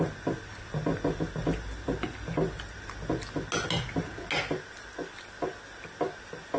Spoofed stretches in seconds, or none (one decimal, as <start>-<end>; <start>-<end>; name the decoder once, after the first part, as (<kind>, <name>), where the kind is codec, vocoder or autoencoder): none